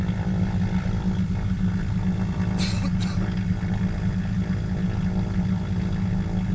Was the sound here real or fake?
real